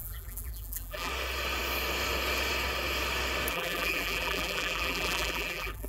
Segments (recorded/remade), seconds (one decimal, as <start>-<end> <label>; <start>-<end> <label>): 0.0-1.1 remade; 1.1-3.5 recorded; 3.5-5.9 remade